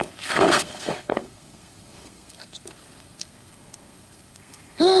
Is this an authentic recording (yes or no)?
no